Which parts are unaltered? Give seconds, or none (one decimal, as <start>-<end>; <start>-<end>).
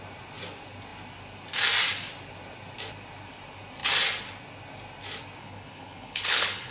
0.0-5.4